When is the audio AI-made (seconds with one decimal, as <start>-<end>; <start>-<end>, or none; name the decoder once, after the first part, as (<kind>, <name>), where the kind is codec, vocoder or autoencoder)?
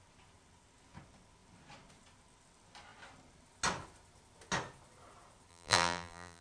5.5-6.4 (vocoder, BigVGAN v2)